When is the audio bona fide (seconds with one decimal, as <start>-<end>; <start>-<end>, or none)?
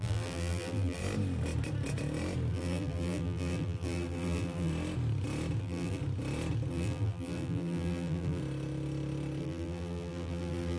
1.0-2.5; 4.7-5.6; 6.0-6.7; 8.4-9.4